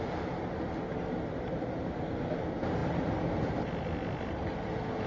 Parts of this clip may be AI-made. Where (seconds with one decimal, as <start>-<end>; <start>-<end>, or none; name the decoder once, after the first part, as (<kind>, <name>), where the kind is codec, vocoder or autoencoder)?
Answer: none